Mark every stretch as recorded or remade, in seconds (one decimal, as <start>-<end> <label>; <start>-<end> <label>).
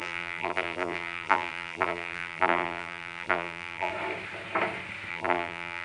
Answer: 0.0-3.9 remade; 3.9-5.1 recorded; 5.1-5.8 remade